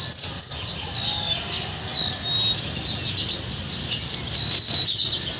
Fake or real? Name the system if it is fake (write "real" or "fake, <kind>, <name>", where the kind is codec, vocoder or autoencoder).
real